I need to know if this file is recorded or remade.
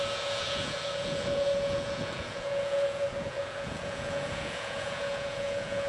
remade